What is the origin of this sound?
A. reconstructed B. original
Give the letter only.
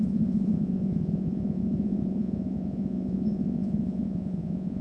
A